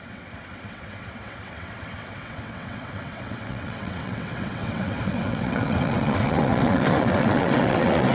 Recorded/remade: remade